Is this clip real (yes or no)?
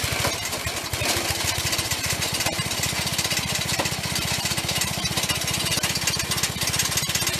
yes